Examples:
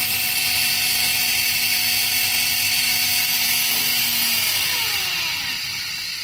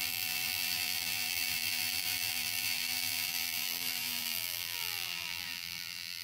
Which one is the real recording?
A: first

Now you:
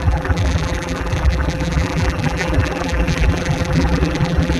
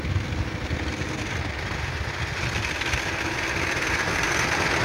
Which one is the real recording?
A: second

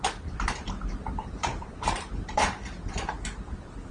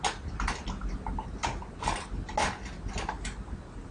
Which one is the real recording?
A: second